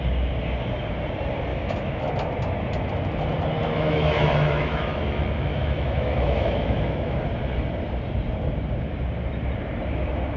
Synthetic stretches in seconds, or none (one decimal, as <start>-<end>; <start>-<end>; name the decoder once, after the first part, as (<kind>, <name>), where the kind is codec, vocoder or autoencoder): 1.5-2.1 (autoencoder, DAC-VAE); 3.6-5.0; 5.5-7.1

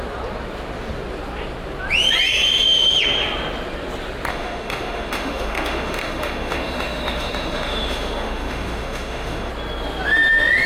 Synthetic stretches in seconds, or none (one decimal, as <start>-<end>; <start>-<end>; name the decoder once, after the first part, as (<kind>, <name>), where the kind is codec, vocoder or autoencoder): 4.3-9.5 (autoencoder, DAC-VAE)